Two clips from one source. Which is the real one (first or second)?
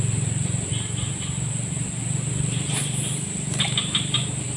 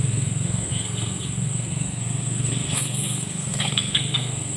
first